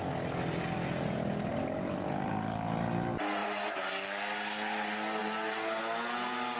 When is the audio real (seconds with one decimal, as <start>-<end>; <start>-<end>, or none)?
0.0-1.5; 2.3-3.4; 3.9-5.2; 5.8-6.6